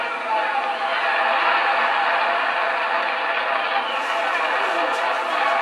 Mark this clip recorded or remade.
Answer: recorded